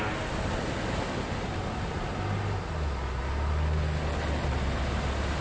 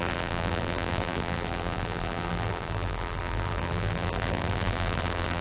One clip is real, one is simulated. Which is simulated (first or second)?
second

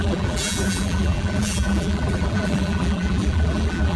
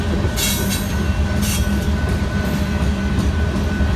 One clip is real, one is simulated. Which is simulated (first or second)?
first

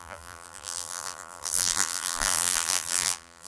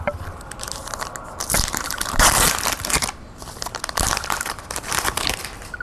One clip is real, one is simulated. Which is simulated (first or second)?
first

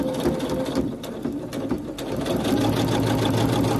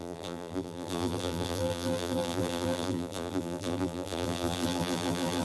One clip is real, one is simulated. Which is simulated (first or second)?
second